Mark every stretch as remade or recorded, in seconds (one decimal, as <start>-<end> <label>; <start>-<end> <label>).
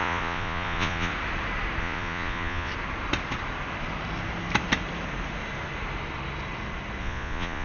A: 0.0-1.1 remade; 1.1-1.8 recorded; 1.8-2.7 remade; 2.7-7.0 recorded; 7.0-7.6 remade